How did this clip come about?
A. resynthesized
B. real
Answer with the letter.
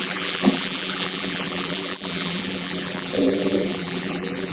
A